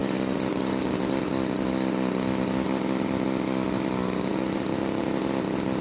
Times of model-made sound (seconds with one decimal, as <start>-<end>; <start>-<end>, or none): 0.0-0.9; 4.3-5.0